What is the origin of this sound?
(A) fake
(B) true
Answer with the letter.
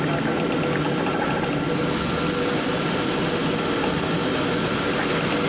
B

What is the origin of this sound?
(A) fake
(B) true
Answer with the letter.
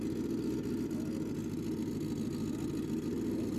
B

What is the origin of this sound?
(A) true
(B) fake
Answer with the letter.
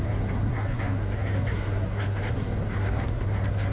B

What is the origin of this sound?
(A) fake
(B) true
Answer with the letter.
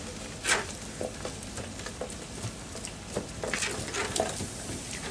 B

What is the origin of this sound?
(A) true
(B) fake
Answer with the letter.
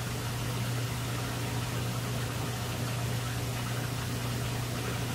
A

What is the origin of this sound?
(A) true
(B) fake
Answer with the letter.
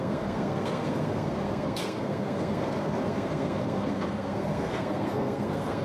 B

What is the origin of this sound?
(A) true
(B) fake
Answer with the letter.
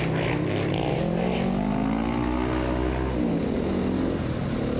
A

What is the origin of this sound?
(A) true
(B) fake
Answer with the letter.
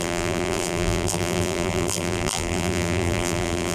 B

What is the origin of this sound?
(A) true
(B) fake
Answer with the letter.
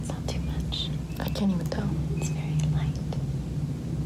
A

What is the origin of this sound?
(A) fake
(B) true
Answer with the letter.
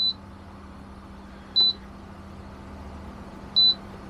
B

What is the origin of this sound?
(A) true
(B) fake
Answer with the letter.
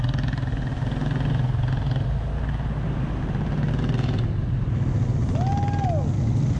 A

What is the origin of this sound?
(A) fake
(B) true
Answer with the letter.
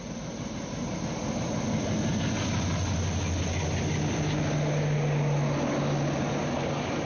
B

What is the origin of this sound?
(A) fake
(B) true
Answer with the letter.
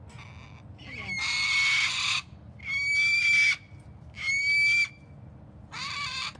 B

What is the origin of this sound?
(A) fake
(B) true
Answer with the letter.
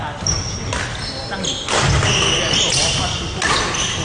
B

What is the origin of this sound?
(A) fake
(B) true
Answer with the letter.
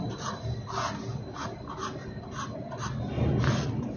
B